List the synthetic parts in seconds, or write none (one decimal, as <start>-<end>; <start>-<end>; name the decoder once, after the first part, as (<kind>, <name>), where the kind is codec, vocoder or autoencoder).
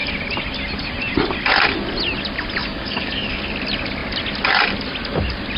2.6-3.4 (codec, DAC)